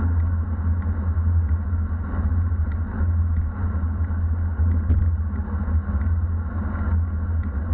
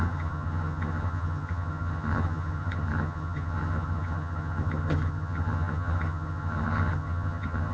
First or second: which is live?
first